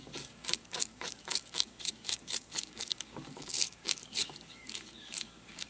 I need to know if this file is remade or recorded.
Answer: remade